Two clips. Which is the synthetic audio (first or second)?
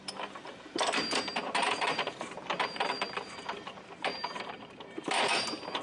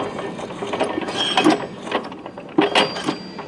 first